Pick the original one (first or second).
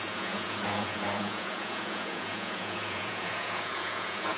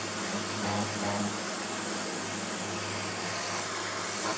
second